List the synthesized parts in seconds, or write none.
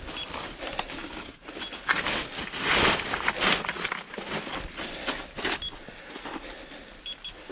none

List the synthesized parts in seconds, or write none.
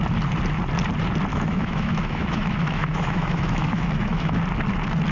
1.3-4.4 (autoencoder, DAC-VAE)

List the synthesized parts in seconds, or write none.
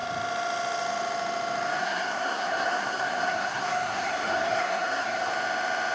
1.8-5.3 (codec, SNAC)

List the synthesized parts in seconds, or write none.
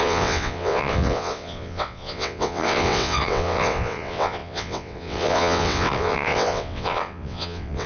0.0-7.9 (vocoder, WaveNeXt)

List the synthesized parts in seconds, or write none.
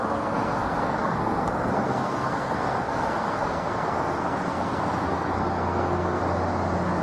0.0-6.2 (codec, SNAC)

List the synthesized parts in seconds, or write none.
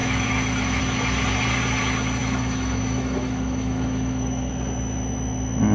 0.0-0.8 (autoencoder, DAC-VAE); 2.2-4.5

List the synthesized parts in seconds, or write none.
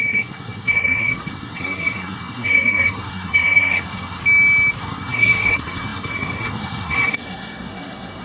0.0-4.2 (codec, SNAC); 4.8-8.2